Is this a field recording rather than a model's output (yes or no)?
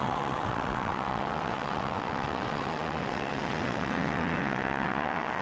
no